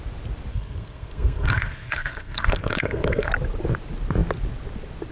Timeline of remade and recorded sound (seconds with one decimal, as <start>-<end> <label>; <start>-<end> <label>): 0.0-0.5 recorded; 0.5-3.3 remade; 3.3-5.1 recorded